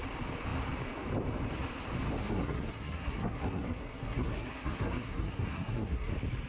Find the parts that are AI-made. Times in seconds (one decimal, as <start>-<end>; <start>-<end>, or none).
2.2-6.1